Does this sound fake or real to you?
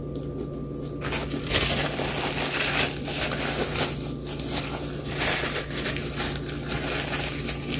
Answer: real